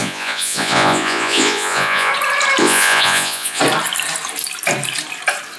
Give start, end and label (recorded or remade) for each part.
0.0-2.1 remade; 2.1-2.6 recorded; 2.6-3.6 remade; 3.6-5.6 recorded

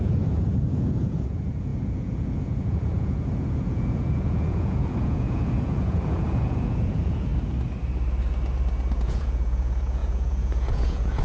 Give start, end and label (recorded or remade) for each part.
0.0-7.3 remade; 7.3-9.0 recorded; 9.0-11.2 remade

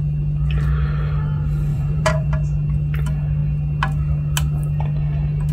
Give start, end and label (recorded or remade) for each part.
0.0-1.7 recorded; 1.7-2.3 remade; 2.3-5.5 recorded

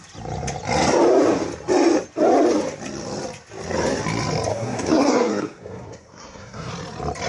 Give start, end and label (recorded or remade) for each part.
0.0-4.5 recorded; 4.5-6.7 remade; 6.7-7.3 recorded

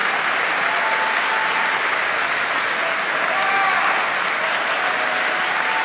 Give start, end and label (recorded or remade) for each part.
0.0-5.8 recorded

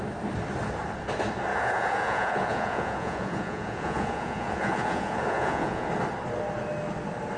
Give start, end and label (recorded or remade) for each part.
0.0-1.5 recorded; 1.5-5.9 remade; 5.9-7.4 recorded

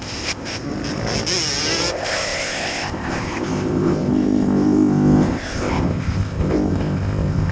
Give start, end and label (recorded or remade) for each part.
0.0-0.6 remade; 0.6-1.9 recorded; 1.9-7.5 remade